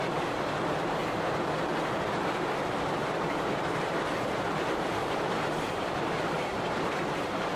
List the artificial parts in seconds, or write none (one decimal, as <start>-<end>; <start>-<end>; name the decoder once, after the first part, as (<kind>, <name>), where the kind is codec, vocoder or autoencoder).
0.0-1.0 (vocoder, BigVGAN v2); 3.2-7.6